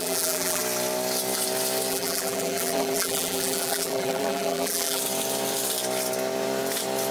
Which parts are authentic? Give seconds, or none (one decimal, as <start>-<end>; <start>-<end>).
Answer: 0.6-1.9; 5.0-7.1

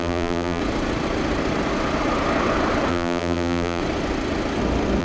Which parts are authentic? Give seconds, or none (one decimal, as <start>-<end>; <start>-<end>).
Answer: 0.6-2.9; 3.8-5.0